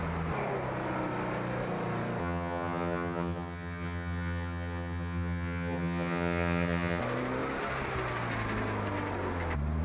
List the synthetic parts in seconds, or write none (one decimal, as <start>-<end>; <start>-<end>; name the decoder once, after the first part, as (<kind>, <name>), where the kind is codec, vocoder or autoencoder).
2.2-7.0 (vocoder, HiFi-GAN)